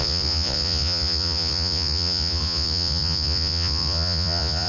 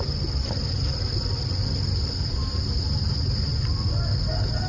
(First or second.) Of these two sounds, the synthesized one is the first